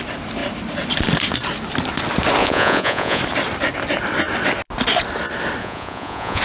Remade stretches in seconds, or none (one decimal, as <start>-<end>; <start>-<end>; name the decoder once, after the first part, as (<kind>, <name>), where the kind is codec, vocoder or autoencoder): 2.4-3.2 (vocoder, Vocos); 5.6-6.4